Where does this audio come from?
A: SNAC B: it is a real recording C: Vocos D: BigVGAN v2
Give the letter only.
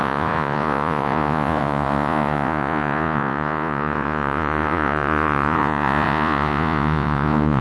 C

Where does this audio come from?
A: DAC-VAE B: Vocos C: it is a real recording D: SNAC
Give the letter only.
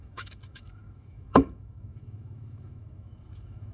A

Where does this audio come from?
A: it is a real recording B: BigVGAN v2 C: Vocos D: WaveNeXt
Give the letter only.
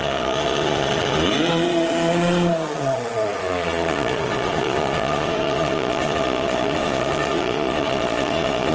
C